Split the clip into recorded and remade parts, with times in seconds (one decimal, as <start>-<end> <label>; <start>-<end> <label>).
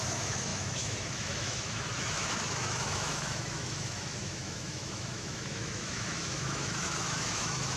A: 0.0-7.8 remade